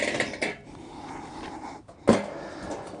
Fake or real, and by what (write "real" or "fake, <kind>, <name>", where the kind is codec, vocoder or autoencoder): real